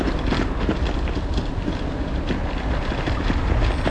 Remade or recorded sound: recorded